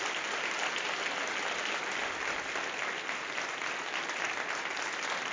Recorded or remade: recorded